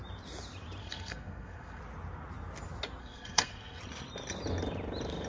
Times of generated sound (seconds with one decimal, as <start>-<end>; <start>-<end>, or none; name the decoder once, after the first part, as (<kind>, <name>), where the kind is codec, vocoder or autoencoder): 0.8-1.8 (codec, SNAC); 3.0-3.8